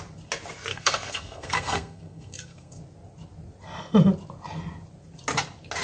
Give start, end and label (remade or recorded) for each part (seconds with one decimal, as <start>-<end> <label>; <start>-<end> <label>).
0.0-0.7 recorded; 0.7-2.8 remade; 2.8-5.8 recorded